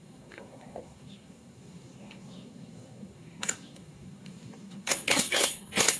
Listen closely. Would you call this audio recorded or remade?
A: remade